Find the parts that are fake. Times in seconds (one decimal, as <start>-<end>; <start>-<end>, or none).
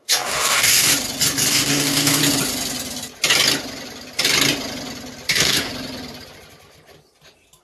0.0-0.9; 1.5-2.2; 5.3-5.7